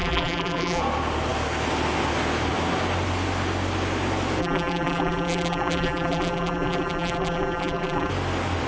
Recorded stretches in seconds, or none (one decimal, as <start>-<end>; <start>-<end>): 0.8-4.4; 8.1-8.7